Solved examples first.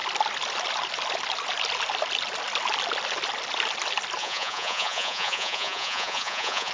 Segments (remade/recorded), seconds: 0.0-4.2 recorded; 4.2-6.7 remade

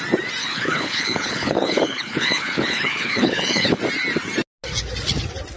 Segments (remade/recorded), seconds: 0.0-0.4 recorded; 0.4-3.8 remade; 3.8-5.6 recorded